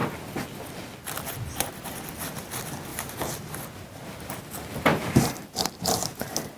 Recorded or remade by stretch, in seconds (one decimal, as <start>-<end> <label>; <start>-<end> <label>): 0.0-2.9 recorded; 2.9-4.4 remade; 4.4-4.9 recorded; 4.9-5.8 remade; 5.8-6.6 recorded